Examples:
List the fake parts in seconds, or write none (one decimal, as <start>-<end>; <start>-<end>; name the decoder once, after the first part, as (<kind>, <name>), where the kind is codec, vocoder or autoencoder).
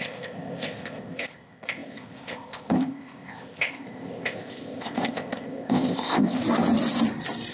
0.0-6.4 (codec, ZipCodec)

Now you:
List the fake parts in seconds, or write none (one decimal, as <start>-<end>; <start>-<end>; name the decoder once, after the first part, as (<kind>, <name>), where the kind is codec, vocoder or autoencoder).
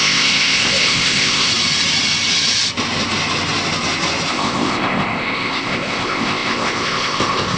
0.0-1.5 (codec, ZipCodec); 4.3-7.6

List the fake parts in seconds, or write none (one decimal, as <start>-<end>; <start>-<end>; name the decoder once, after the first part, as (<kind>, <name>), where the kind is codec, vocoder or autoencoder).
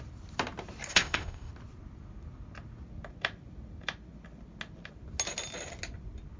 0.9-1.5 (codec, ZipCodec)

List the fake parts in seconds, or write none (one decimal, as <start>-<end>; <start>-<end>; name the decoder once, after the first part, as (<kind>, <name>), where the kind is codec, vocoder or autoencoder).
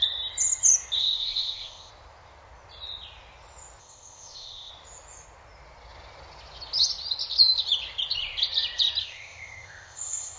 1.0-1.9 (codec, ZipCodec); 3.8-4.7; 9.0-10.4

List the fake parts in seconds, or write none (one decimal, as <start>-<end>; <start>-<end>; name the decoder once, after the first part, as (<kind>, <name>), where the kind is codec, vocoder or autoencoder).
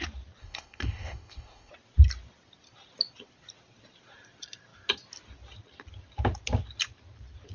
0.4-1.7 (codec, ZipCodec)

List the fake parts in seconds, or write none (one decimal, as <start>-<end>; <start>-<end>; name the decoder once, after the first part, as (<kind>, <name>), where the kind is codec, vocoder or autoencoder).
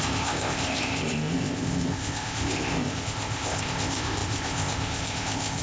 0.0-5.6 (codec, ZipCodec)